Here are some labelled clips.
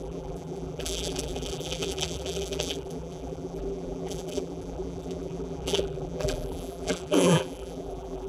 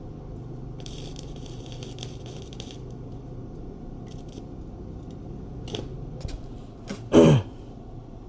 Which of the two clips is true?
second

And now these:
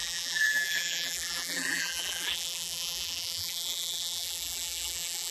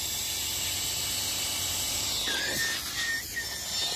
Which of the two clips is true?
second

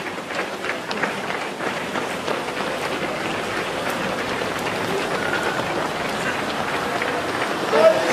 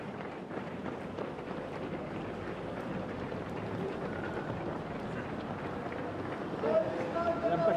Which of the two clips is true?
first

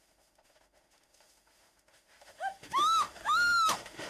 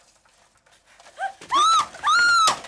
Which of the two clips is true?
second